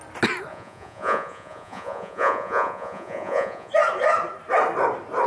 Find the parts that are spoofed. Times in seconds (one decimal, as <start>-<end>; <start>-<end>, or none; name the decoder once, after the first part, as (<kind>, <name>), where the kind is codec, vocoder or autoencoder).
0.5-3.7 (vocoder, Vocos)